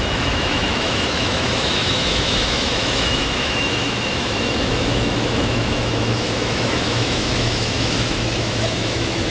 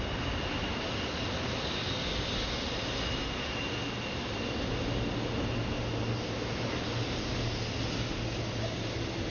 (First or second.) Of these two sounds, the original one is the second